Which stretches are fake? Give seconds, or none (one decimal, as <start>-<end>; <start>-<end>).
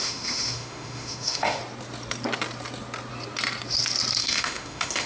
0.0-1.6; 4.2-5.1